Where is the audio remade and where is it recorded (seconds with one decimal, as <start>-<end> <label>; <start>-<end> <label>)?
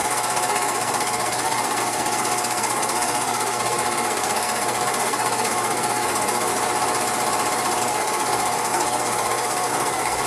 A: 0.0-6.5 remade; 6.5-7.8 recorded; 7.8-10.3 remade